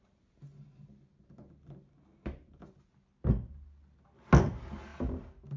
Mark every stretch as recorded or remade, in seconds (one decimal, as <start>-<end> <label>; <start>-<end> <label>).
0.0-5.6 recorded